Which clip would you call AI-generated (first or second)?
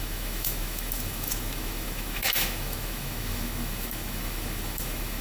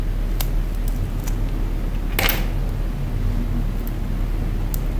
first